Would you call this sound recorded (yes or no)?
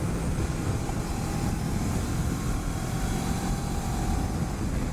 yes